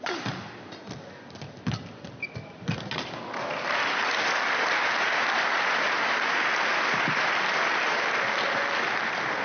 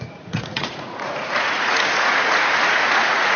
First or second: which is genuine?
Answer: first